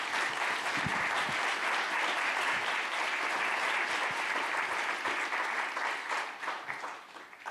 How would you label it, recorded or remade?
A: recorded